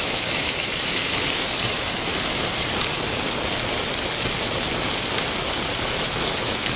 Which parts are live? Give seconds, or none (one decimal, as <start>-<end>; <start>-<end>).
2.1-5.9